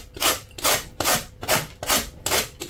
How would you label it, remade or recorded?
recorded